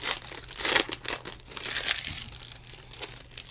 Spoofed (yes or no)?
no